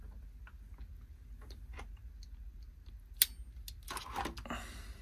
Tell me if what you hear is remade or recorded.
recorded